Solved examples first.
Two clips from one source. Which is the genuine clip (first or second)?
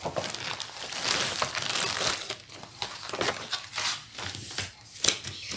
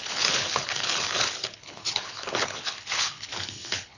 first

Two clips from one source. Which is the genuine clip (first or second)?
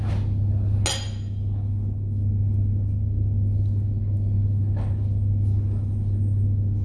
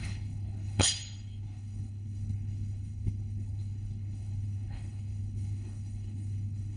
first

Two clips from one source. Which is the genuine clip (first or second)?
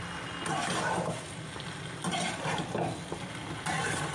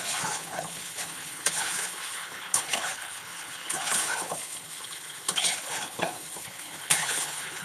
first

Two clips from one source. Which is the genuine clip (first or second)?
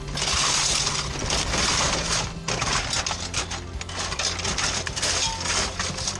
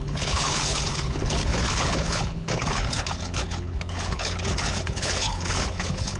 first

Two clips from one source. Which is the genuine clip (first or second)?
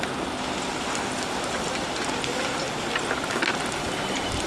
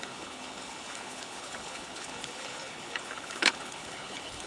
first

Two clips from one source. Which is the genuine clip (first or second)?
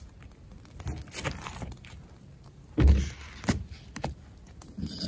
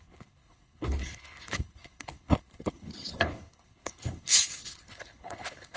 first